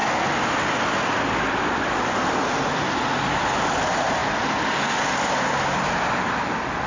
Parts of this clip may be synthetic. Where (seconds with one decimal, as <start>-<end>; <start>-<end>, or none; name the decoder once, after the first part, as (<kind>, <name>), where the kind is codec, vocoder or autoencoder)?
1.6-4.2 (vocoder, BigVGAN v2); 6.0-6.9